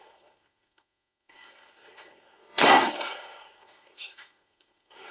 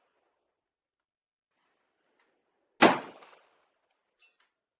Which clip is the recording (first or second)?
second